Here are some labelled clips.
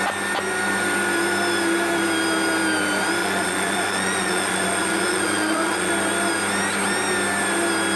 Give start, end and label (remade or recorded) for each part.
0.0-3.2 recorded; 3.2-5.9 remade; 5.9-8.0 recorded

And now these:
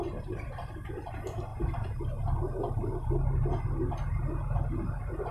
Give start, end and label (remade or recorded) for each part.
0.0-5.3 recorded

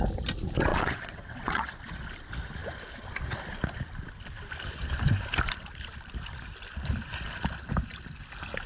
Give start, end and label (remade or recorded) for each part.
0.0-0.7 recorded; 0.7-1.8 remade; 1.8-8.7 recorded